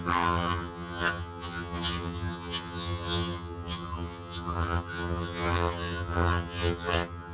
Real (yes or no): no